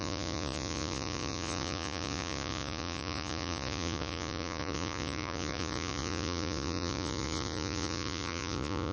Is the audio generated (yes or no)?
yes